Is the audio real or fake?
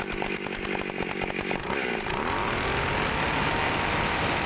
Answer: real